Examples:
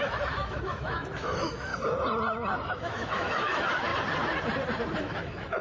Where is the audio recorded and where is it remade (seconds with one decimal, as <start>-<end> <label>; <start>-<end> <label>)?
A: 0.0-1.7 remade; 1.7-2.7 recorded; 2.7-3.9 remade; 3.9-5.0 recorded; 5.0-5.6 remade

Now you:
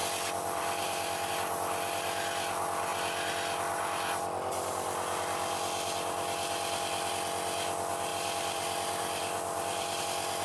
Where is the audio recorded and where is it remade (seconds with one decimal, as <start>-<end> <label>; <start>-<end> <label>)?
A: 0.0-1.3 remade; 1.3-8.1 recorded; 8.1-10.0 remade; 10.0-10.4 recorded

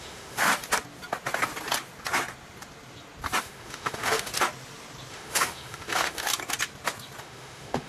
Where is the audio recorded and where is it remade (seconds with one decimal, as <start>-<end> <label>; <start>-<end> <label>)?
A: 0.0-0.5 remade; 0.5-3.4 recorded; 3.4-4.3 remade; 4.3-5.1 recorded; 5.1-6.3 remade; 6.3-7.2 recorded; 7.2-7.9 remade

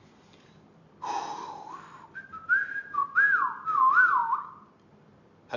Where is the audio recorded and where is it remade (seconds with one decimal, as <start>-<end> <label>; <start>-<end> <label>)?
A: 0.0-5.6 recorded

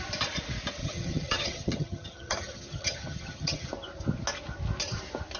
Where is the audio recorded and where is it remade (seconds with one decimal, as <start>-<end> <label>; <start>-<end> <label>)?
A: 0.0-0.8 recorded; 0.8-3.7 remade; 3.7-5.4 recorded

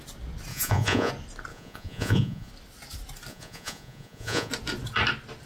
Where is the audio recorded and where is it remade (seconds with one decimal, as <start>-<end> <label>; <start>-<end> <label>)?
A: 0.0-0.5 recorded; 0.5-1.1 remade; 1.1-1.5 recorded; 1.5-2.5 remade; 2.5-3.3 recorded; 3.3-4.5 remade; 4.5-5.5 recorded